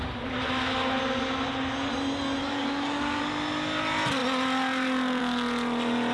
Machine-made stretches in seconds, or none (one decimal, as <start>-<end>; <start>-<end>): 2.4-3.2